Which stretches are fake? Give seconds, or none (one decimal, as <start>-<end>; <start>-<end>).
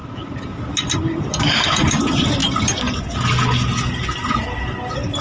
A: none